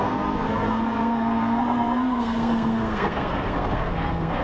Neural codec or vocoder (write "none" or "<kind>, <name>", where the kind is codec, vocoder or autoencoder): codec, SNAC